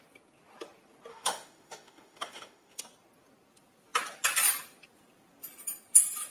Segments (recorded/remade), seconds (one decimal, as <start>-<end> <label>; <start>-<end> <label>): 0.0-1.1 recorded; 1.1-2.8 remade; 2.8-6.3 recorded